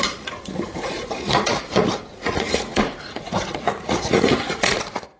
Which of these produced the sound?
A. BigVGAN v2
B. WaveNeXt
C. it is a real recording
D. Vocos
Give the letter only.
D